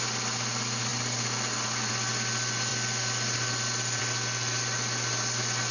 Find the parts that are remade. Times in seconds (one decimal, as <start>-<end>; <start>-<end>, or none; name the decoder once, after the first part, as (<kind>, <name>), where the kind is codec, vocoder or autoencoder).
none